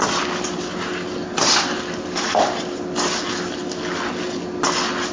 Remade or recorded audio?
recorded